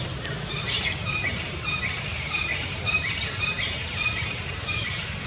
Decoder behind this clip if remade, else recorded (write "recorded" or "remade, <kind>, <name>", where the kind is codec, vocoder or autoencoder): remade, vocoder, BigVGAN v2